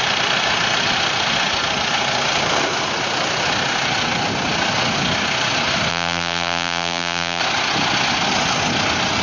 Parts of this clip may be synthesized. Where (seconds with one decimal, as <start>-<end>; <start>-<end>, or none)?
5.9-7.4